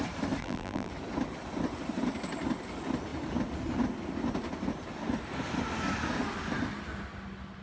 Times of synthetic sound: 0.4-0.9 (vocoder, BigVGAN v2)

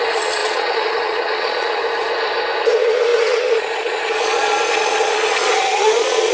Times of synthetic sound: 0.0-1.8 (vocoder, Vocos); 2.6-6.3

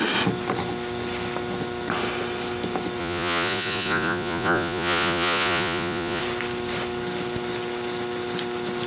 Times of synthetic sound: 3.0-6.2 (vocoder, Vocos)